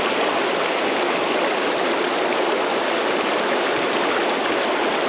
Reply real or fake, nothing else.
real